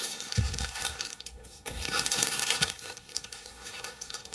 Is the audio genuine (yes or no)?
no